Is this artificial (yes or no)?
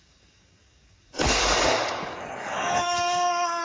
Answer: yes